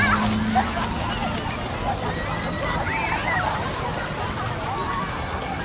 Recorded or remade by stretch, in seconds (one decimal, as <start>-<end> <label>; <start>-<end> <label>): 0.0-5.1 recorded; 5.1-5.6 remade